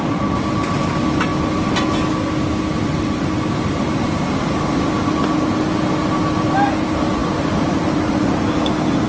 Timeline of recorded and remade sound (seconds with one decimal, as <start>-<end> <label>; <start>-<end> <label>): 0.0-9.1 recorded